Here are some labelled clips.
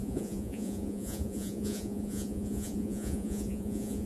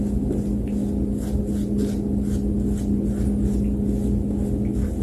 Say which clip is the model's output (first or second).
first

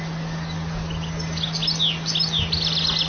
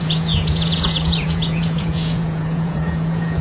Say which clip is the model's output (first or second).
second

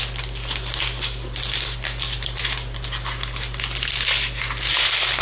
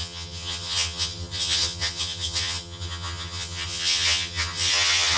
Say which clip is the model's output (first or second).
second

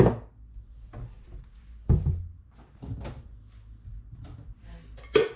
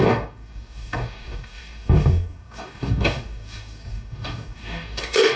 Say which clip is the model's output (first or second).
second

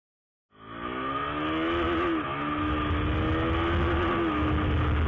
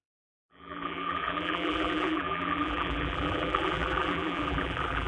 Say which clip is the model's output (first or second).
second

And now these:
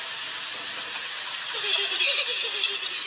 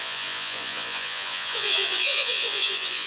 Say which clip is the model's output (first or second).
second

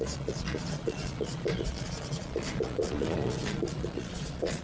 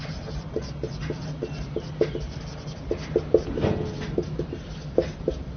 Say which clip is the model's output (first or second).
first